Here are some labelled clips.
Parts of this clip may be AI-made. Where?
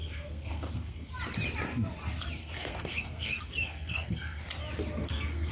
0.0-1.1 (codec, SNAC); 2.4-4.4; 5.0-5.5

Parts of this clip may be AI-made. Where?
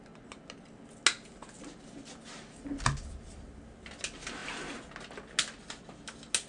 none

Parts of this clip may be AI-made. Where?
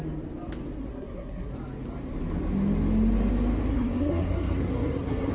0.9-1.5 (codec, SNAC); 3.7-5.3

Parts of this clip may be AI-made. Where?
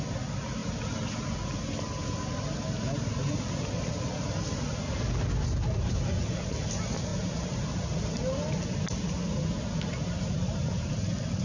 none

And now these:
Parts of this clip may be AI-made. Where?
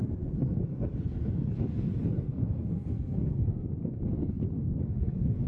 0.0-5.5 (codec, SNAC)